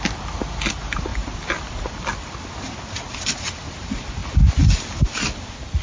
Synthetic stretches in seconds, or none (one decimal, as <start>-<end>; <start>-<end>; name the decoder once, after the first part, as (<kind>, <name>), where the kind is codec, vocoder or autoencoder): 1.1-3.4 (vocoder, BigVGAN v2)